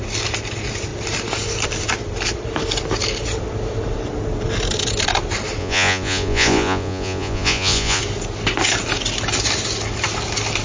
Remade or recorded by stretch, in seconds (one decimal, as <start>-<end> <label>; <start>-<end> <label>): 0.0-5.6 recorded; 5.6-8.0 remade; 8.0-10.6 recorded